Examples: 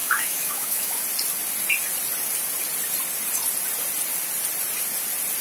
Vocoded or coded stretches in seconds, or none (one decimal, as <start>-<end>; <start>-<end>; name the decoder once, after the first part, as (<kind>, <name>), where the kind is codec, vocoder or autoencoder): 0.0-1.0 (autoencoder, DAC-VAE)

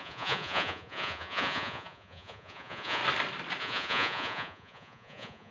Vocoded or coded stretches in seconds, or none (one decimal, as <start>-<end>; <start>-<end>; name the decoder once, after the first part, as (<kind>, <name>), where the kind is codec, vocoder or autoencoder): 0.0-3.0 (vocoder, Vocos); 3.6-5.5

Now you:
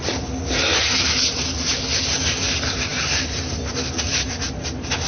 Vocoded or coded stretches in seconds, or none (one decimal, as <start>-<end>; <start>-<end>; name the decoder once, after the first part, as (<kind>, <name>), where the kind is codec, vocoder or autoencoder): none